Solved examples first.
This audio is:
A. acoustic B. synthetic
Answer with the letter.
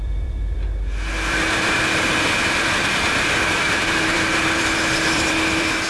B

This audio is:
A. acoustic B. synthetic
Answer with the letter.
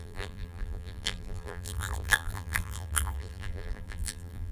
B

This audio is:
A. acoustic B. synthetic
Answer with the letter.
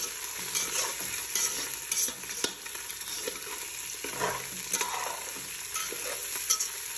A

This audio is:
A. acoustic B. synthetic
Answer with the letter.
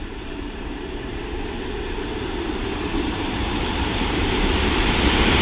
B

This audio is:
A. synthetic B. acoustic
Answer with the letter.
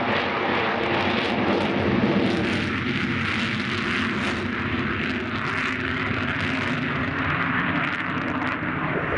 B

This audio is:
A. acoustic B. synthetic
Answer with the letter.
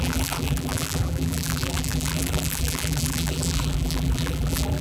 B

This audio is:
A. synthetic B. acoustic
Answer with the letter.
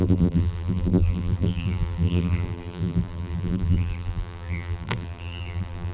A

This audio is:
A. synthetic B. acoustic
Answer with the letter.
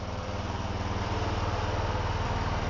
A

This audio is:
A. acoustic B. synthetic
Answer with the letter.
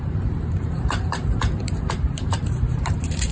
B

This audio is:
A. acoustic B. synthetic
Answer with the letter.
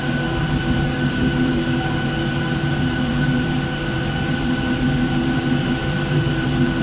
B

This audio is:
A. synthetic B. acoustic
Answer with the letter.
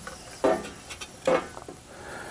A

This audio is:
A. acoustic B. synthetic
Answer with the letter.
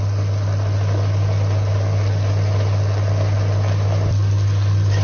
A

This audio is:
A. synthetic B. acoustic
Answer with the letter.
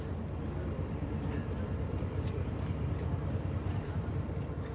A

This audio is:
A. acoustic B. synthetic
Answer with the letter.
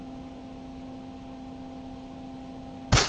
A